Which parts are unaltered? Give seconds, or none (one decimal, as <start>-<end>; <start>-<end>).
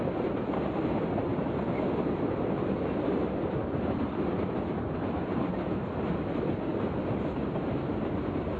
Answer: 0.0-8.6